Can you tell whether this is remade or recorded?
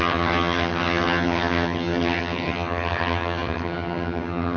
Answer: remade